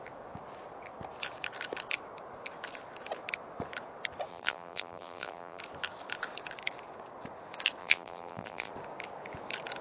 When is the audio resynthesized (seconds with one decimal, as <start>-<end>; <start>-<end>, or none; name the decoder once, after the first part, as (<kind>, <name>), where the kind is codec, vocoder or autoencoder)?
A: 4.3-5.6 (vocoder, BigVGAN v2); 7.8-8.7